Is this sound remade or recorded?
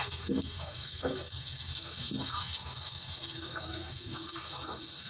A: remade